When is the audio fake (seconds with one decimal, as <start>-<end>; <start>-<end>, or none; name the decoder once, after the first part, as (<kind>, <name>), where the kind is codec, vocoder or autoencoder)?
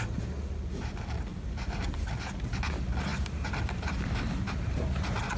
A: 1.3-2.2 (vocoder, BigVGAN v2); 3.1-3.6